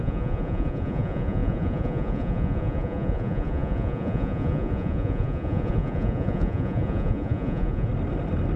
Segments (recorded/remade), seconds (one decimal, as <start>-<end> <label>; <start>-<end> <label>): 0.0-7.9 remade; 7.9-8.6 recorded